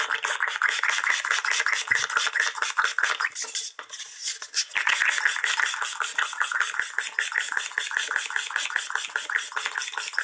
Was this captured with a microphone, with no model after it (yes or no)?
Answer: yes